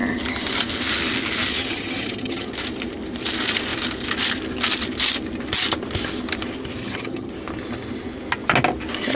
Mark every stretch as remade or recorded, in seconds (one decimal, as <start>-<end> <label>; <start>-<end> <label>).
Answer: 0.0-1.5 recorded; 1.5-2.5 remade; 2.5-6.8 recorded; 6.8-7.3 remade; 7.3-9.1 recorded